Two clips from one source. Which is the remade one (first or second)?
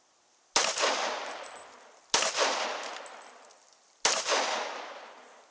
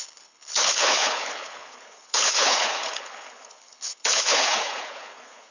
second